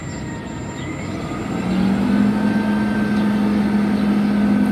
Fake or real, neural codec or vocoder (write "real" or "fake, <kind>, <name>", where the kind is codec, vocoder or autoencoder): real